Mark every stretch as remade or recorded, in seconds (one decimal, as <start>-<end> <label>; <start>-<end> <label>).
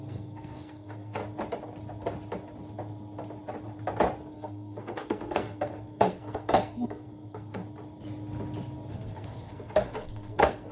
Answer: 0.0-1.2 remade; 1.2-4.3 recorded; 4.3-7.6 remade; 7.6-8.9 recorded; 8.9-10.7 remade